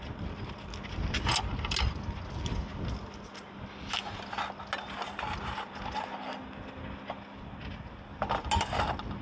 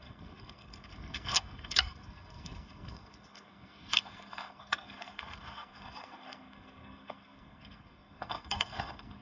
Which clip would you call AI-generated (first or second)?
second